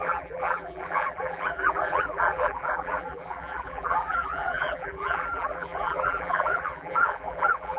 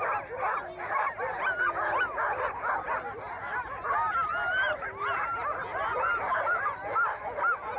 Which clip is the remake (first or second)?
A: first